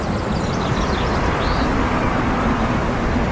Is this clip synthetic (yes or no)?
no